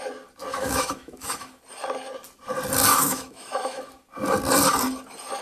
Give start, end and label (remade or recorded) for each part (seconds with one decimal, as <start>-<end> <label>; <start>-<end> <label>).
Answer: 0.0-0.5 recorded; 0.5-1.6 remade; 1.6-2.9 recorded; 2.9-3.8 remade; 3.8-5.4 recorded